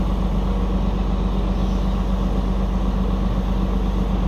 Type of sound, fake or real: real